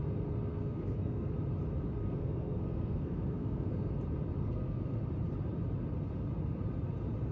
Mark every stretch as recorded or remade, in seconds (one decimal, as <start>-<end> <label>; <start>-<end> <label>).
0.0-0.5 recorded; 0.5-1.3 remade; 1.3-2.0 recorded; 2.0-3.9 remade; 3.9-4.4 recorded; 4.4-5.0 remade; 5.0-7.3 recorded

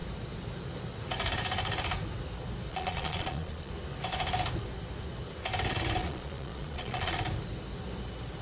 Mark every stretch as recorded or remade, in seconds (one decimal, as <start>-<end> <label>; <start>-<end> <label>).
0.0-2.7 recorded; 2.7-3.7 remade; 3.7-6.0 recorded; 6.0-7.2 remade; 7.2-8.4 recorded

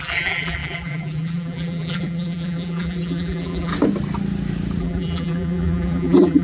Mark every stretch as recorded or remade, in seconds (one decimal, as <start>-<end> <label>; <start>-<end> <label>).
0.0-3.7 remade; 3.7-4.8 recorded; 4.8-6.4 remade

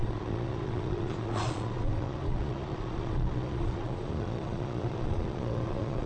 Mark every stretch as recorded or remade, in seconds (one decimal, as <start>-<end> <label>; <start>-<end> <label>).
0.0-6.1 remade

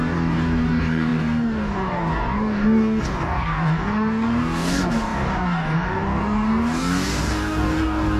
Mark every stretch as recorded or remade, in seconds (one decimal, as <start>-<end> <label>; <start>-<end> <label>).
0.0-8.2 remade

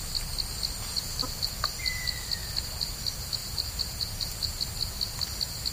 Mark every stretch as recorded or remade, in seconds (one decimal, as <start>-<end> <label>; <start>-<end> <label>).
0.0-0.9 recorded; 0.9-1.5 remade; 1.5-2.4 recorded; 2.4-2.9 remade; 2.9-3.4 recorded; 3.4-4.5 remade; 4.5-5.7 recorded

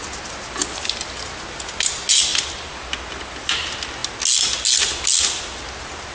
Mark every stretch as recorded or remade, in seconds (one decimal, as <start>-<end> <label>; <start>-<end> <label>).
0.0-6.1 recorded

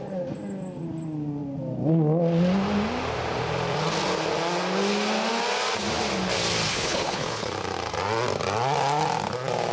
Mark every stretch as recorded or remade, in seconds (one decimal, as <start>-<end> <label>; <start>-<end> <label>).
0.0-6.7 recorded; 6.7-7.5 remade; 7.5-9.7 recorded